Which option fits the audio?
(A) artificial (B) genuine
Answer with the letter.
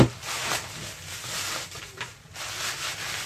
B